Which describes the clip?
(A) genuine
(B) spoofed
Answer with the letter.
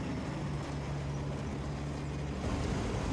A